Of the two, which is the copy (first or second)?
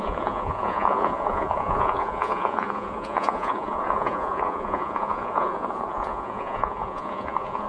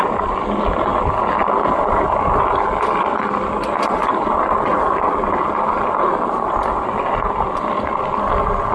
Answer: first